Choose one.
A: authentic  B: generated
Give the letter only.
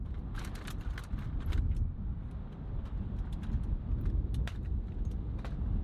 A